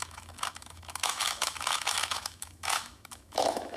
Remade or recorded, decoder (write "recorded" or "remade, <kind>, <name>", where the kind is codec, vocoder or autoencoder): remade, autoencoder, DAC-VAE